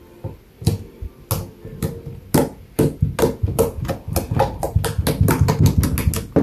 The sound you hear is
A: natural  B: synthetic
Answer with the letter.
A